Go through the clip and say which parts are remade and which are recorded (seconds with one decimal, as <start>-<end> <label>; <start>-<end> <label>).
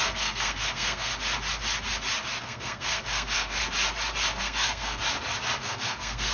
0.0-1.1 remade; 1.1-2.4 recorded; 2.4-3.6 remade; 3.6-4.4 recorded; 4.4-5.0 remade; 5.0-5.6 recorded; 5.6-6.3 remade